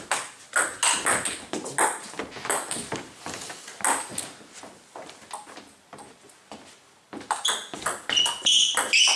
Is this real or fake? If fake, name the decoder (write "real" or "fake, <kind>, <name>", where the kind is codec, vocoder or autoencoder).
real